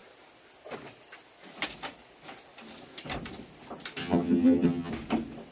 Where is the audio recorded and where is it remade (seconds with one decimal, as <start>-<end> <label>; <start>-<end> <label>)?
0.0-4.0 recorded; 4.0-4.9 remade; 4.9-5.5 recorded

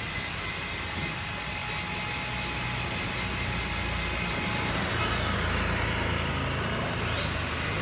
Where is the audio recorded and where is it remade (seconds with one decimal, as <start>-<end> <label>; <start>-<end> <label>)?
0.0-7.8 recorded

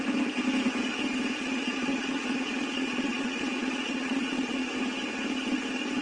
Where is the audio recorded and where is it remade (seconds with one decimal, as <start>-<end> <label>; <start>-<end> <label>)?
0.0-1.4 recorded; 1.4-4.7 remade; 4.7-6.0 recorded